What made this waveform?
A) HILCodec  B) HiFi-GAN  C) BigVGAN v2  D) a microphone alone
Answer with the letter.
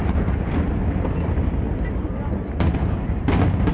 D